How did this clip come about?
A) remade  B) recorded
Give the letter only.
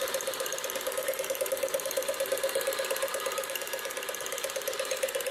A